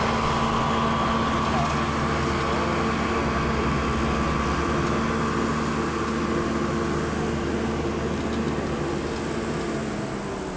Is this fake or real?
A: real